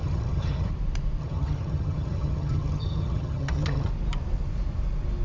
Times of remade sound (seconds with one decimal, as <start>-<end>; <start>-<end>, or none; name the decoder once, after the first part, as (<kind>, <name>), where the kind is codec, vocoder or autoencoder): 0.0-0.7 (vocoder, HiFi-GAN); 1.2-3.9